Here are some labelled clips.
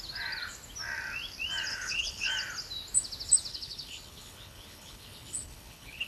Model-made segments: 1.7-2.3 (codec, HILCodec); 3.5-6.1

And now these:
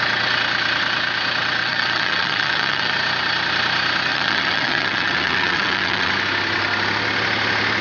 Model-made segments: 1.6-2.9 (vocoder, WaveNeXt); 4.1-6.1